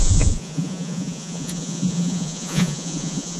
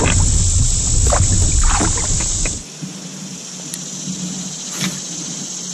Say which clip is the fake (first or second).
first